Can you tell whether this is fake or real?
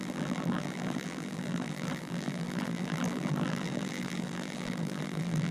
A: fake